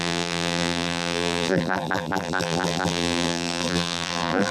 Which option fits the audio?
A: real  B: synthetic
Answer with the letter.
B